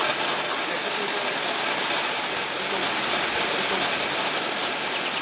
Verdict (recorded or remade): recorded